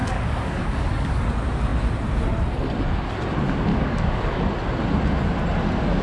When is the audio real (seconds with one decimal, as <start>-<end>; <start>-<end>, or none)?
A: 1.1-3.7; 4.4-6.0